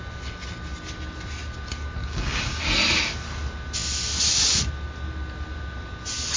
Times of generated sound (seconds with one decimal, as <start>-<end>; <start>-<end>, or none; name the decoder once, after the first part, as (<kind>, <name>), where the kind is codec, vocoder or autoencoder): 2.0-2.6 (codec, DAC)